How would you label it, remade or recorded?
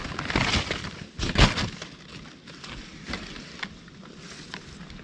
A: recorded